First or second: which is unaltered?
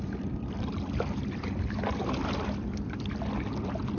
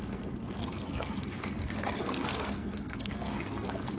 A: first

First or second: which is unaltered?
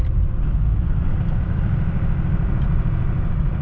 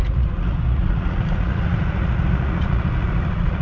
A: first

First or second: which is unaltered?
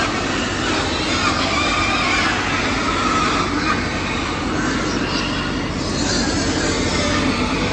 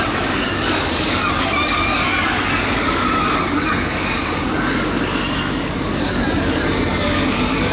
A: first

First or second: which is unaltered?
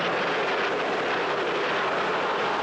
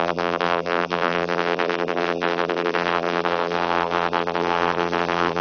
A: first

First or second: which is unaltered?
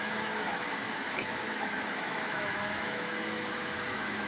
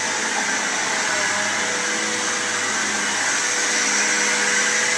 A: second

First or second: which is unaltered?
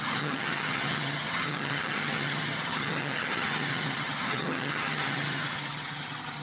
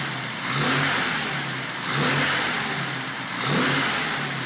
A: second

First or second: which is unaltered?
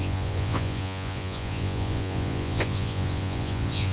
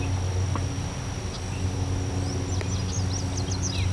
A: second